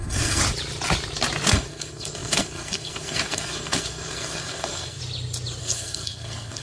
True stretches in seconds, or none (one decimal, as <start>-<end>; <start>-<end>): 0.4-1.5; 5.0-5.6

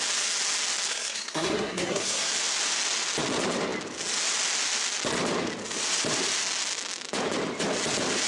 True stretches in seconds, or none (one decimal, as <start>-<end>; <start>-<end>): 0.0-0.9; 2.3-8.3

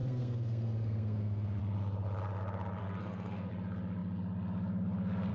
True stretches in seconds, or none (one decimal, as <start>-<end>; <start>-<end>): 1.6-2.8; 3.5-5.3

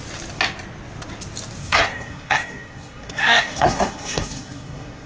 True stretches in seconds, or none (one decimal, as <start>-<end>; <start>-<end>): 0.0-1.6

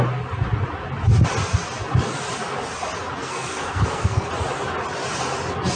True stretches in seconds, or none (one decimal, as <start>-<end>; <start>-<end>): 0.0-3.2; 4.3-5.8